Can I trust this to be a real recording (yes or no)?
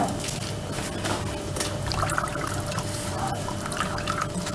yes